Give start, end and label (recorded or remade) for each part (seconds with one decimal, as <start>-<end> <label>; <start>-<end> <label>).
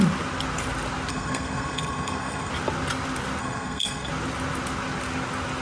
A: 0.0-1.1 recorded; 1.1-2.5 remade; 2.5-3.4 recorded; 3.4-4.1 remade; 4.1-5.6 recorded